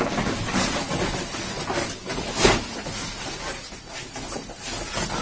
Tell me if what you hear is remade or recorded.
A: recorded